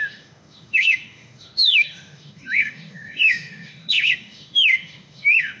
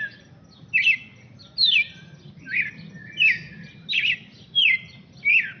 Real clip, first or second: second